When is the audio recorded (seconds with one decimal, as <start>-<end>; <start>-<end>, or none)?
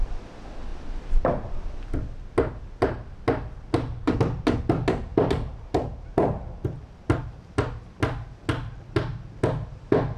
0.0-10.2